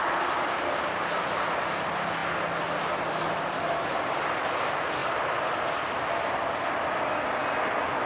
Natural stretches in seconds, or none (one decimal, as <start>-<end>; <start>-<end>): 0.0-8.1